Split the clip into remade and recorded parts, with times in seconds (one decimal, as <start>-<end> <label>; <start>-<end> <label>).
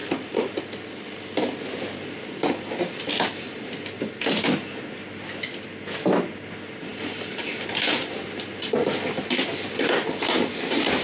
0.0-11.0 recorded